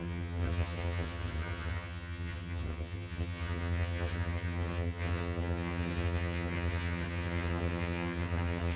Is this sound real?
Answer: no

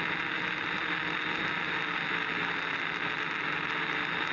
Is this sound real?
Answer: yes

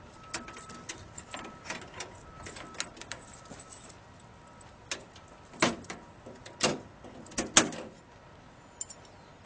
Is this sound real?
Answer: yes